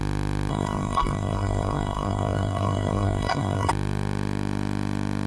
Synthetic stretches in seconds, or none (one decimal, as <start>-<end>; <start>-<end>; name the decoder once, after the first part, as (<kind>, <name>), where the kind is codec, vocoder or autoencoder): 0.5-3.7 (codec, SNAC)